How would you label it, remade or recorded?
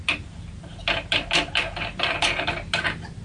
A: recorded